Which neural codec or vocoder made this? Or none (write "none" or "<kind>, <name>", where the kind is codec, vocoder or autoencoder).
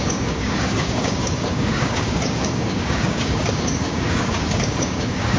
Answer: codec, DAC